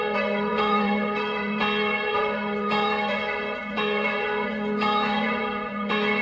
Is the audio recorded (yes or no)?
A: no